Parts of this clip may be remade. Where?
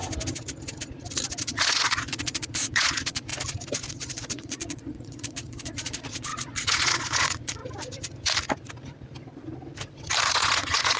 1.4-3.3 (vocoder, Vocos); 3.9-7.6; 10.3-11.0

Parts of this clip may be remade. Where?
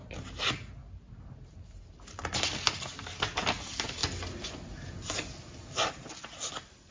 none